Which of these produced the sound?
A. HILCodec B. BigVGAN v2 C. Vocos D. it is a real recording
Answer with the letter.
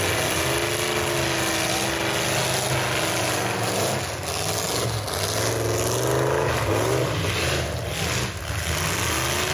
D